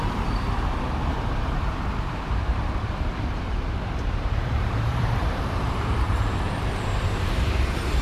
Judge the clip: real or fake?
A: fake